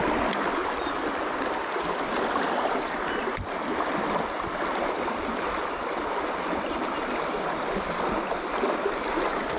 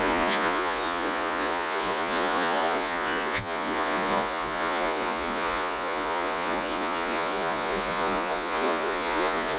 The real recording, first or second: first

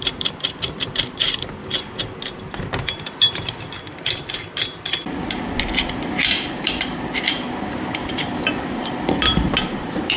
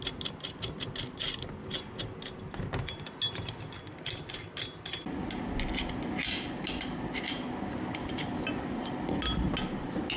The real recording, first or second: second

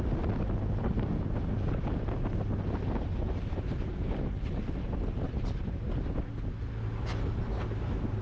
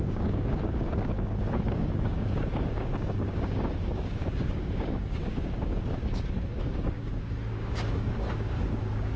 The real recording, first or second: first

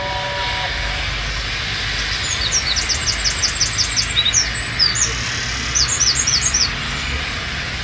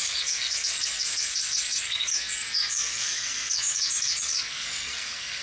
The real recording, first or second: first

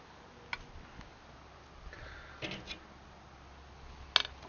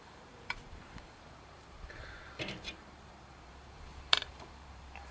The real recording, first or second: first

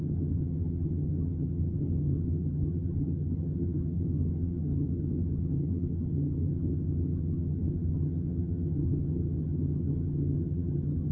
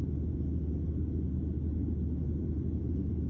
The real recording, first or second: second